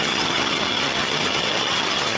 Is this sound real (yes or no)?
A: no